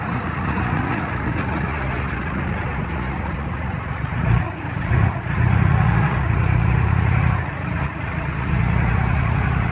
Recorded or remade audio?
remade